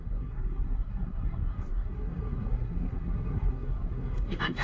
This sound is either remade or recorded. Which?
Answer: remade